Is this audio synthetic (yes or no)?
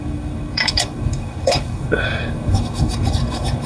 yes